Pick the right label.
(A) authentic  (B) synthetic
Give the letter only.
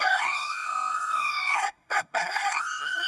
B